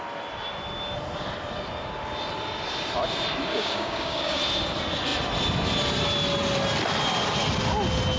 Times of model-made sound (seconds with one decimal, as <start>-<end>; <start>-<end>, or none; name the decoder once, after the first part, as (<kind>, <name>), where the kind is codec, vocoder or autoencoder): 3.5-4.4 (codec, DAC)